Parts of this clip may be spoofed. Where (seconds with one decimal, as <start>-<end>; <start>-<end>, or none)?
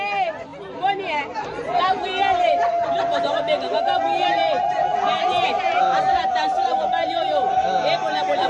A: none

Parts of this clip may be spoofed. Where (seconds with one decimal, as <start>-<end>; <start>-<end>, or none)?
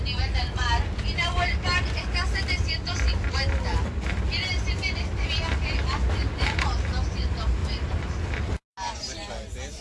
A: none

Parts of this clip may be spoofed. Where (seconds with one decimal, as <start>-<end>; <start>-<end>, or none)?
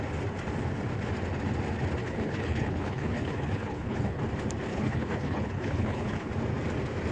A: 2.0-4.2; 4.7-6.3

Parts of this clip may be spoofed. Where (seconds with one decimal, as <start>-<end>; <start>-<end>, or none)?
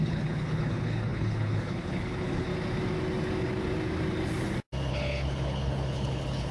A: 0.0-2.5; 4.9-6.5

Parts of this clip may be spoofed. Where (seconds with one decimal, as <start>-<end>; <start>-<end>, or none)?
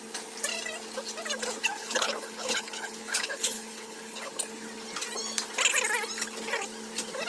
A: 1.8-4.3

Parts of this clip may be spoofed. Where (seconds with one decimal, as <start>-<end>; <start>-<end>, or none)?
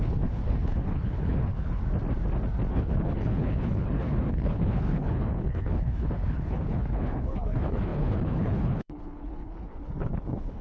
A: 0.0-1.8; 2.7-10.6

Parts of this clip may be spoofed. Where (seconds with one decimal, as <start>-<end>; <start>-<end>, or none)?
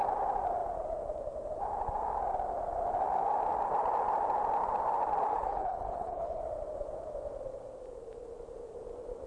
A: 5.3-6.4